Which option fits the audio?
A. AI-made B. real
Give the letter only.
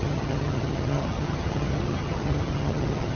A